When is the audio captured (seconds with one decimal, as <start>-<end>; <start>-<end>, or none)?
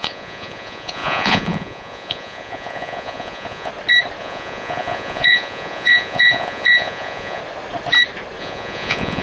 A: 3.7-4.2; 7.4-8.4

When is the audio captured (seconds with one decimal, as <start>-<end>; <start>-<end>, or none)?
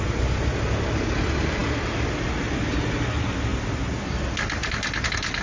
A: 0.0-5.4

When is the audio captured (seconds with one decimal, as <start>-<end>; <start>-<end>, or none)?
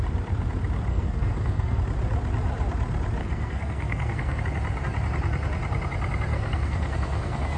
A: 0.0-0.9; 1.8-3.2; 4.4-6.3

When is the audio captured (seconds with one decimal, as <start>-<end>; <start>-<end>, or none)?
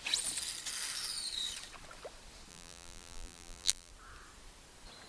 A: 0.0-2.5; 3.9-5.1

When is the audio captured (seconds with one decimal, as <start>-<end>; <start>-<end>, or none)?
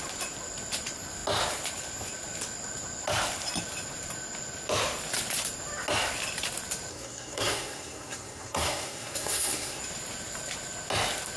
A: 0.0-6.9; 9.8-11.4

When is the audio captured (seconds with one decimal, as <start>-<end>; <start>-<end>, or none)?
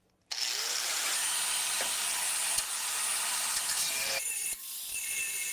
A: 0.0-5.5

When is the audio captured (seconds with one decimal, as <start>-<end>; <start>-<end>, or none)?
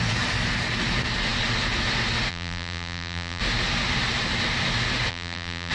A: 0.0-2.3; 3.4-5.1